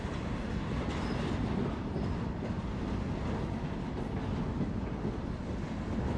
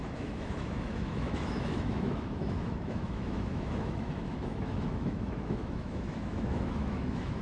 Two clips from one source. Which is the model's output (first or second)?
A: second